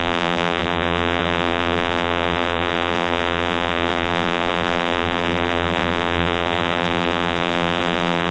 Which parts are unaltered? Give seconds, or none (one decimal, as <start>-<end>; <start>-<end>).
none